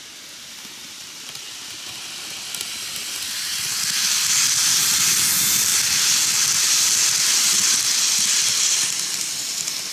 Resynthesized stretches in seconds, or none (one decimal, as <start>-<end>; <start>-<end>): 0.8-1.8